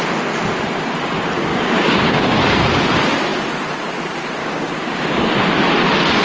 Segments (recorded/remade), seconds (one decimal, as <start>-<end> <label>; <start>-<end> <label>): 0.0-1.5 recorded; 1.5-2.4 remade; 2.4-4.4 recorded; 4.4-5.2 remade; 5.2-6.2 recorded